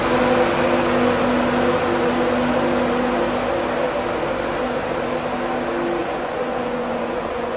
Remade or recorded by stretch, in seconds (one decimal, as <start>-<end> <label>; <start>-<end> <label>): 0.0-6.0 recorded; 6.0-7.6 remade